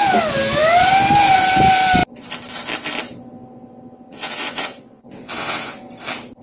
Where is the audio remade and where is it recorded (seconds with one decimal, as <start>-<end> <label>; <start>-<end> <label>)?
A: 0.0-4.1 recorded; 4.1-5.8 remade; 5.8-6.4 recorded